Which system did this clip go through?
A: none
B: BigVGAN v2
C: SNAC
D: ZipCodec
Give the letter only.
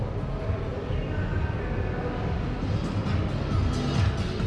A